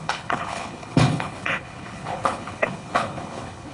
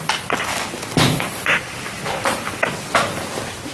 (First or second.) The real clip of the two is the second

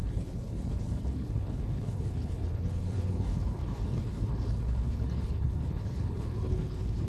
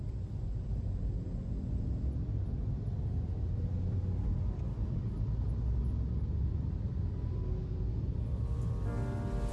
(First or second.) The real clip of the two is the second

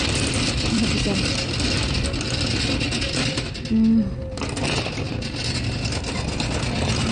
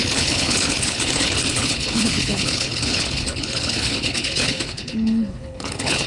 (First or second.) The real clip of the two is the first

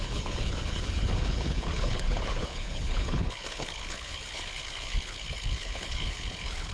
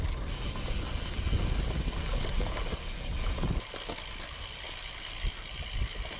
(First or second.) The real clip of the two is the second